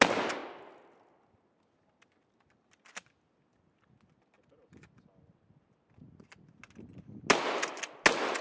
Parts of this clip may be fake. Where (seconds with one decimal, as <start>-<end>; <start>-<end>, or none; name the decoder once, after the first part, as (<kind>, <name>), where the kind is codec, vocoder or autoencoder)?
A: none